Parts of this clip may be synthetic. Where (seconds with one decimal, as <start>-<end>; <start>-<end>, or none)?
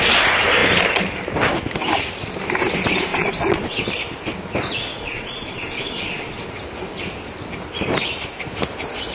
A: 3.1-3.8; 4.9-6.4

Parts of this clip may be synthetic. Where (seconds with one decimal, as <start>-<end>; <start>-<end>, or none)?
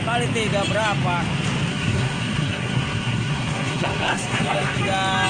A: 1.7-4.8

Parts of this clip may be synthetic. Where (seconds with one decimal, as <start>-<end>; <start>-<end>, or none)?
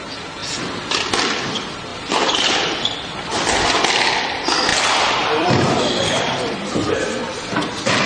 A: 1.9-3.8; 4.7-6.9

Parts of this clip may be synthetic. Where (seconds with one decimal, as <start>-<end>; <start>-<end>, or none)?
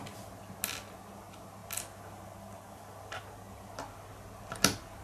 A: none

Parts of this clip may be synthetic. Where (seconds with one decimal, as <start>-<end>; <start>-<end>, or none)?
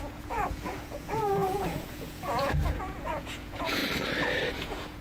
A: 0.0-3.8; 4.5-5.0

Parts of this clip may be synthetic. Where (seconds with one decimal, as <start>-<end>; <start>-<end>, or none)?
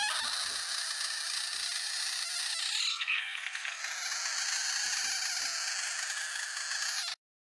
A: 2.9-3.8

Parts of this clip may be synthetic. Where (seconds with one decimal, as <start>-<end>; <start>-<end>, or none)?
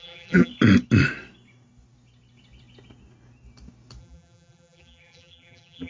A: 0.0-0.5; 4.0-5.9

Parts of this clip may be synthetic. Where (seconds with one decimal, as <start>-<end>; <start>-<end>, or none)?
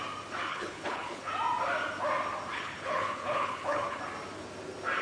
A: 0.5-1.3; 2.5-4.0